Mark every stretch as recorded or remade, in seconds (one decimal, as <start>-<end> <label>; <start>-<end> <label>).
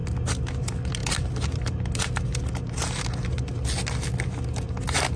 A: 0.0-5.2 recorded